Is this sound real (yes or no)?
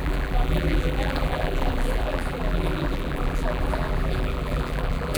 no